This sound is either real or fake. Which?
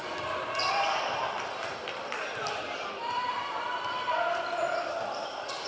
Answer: fake